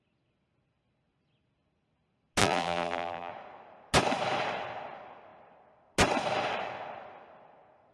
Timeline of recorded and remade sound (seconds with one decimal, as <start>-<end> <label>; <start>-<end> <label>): 0.0-2.4 recorded; 2.4-3.3 remade; 3.3-7.9 recorded